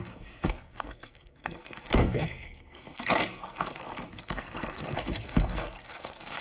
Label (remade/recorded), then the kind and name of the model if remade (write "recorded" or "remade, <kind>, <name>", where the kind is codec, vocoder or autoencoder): remade, codec, SNAC